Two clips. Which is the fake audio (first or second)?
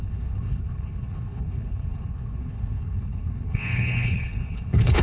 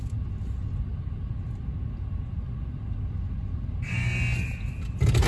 first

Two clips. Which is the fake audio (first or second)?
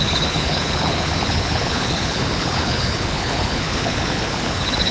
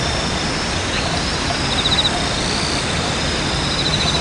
first